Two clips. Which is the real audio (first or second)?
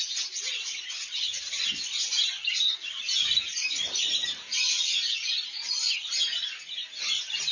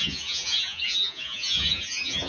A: first